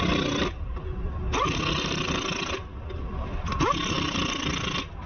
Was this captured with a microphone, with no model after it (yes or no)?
yes